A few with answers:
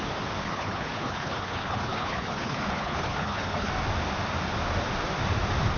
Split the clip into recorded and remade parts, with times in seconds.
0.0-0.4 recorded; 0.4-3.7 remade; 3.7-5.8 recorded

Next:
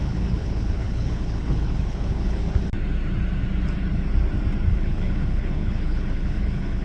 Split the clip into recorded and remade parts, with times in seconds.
0.0-2.4 remade; 2.4-4.7 recorded; 4.7-6.8 remade

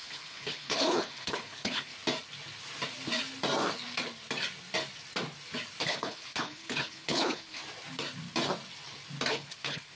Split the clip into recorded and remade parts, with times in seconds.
0.0-1.9 remade; 1.9-5.8 recorded; 5.8-7.6 remade; 7.6-9.3 recorded; 9.3-10.0 remade